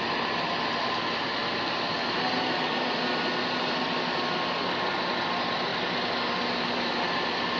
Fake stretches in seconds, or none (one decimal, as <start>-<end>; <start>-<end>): none